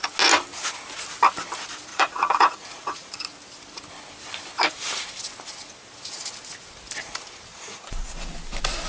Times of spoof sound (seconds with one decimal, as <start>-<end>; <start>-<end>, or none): 1.9-3.2; 7.5-8.3